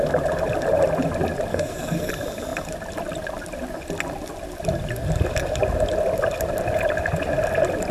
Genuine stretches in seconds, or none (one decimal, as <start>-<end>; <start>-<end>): 0.0-1.5; 2.1-7.9